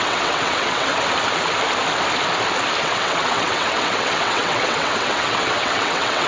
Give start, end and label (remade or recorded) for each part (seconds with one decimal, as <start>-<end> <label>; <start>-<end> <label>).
0.0-0.9 remade; 0.9-2.8 recorded; 2.8-6.3 remade